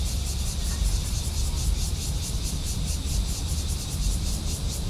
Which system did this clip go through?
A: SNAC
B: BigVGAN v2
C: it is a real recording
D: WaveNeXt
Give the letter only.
B